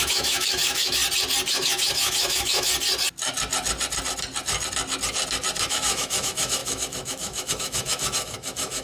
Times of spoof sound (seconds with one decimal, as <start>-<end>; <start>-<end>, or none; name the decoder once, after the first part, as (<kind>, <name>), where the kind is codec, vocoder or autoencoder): 0.0-1.0 (autoencoder, DAC-VAE); 1.5-2.7; 5.7-8.8